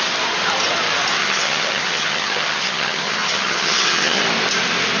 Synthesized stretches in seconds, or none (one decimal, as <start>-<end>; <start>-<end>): 1.2-4.2